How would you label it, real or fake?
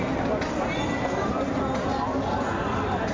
real